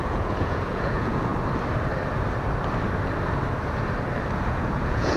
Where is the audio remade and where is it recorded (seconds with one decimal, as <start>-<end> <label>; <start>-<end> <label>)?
0.0-1.3 remade; 1.3-4.4 recorded; 4.4-5.2 remade